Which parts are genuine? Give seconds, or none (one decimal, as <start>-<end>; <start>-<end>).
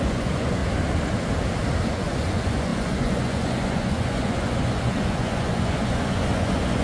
0.6-1.9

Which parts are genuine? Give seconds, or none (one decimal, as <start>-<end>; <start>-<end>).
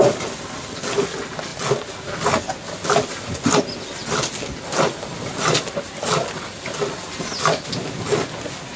0.0-4.0; 4.6-8.8